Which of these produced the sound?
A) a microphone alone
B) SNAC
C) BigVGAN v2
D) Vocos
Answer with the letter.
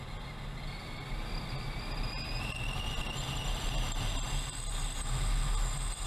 A